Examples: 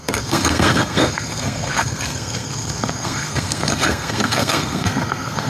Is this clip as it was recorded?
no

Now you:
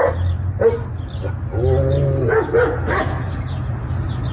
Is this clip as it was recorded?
yes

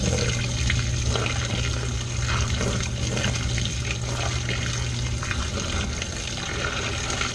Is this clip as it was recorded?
yes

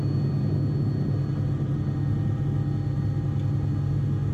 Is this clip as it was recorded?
yes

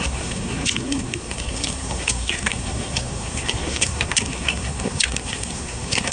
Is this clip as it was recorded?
no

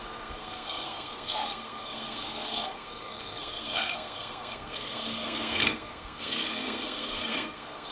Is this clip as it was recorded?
no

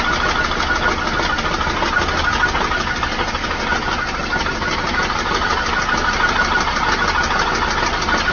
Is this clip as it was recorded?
yes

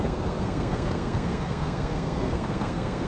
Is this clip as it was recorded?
no